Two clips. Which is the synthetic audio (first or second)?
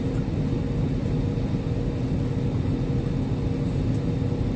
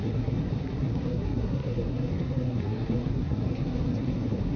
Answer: second